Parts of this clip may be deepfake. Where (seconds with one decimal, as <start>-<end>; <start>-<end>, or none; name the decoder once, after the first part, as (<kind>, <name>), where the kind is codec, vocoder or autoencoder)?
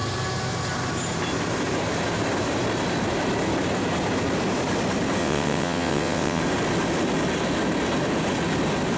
5.2-6.4 (vocoder, WaveNeXt)